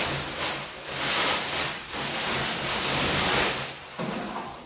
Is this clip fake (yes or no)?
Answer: no